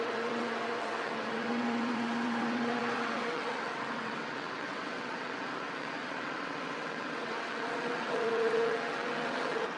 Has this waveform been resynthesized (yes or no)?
yes